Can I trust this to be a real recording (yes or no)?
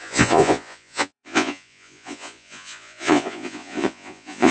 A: no